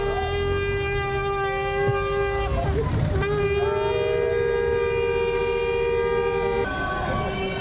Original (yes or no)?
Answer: yes